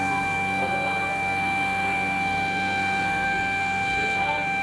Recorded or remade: remade